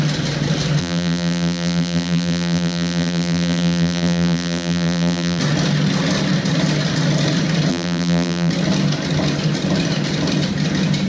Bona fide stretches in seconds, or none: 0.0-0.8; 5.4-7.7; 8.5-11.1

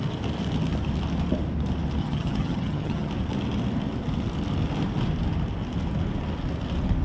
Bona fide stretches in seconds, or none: 0.0-2.0; 3.1-7.0

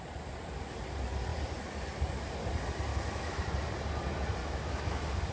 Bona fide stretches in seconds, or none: 0.0-2.9; 3.4-4.4

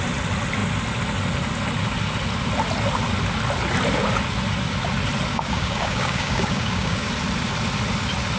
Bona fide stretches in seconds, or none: 0.0-5.3; 7.1-8.4